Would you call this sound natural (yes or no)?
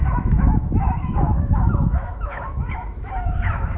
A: no